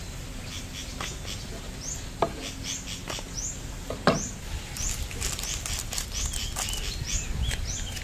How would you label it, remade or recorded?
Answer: recorded